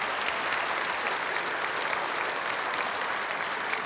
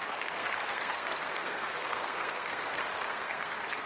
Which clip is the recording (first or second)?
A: first